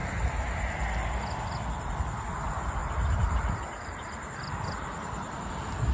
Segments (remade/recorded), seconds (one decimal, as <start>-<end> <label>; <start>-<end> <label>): 0.0-1.9 remade; 1.9-2.8 recorded; 2.8-5.5 remade; 5.5-5.9 recorded